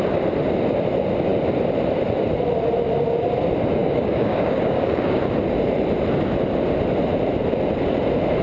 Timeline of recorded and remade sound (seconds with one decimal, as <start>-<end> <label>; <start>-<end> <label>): 0.0-3.8 recorded; 3.8-5.2 remade; 5.2-8.4 recorded